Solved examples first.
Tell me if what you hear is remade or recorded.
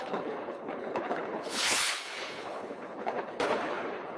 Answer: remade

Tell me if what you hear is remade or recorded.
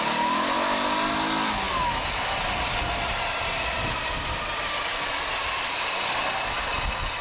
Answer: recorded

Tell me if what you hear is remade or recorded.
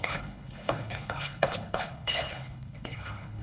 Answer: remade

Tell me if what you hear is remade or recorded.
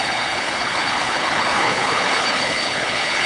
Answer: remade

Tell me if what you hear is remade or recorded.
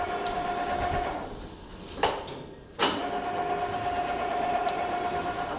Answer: recorded